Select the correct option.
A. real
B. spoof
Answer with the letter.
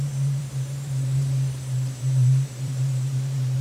B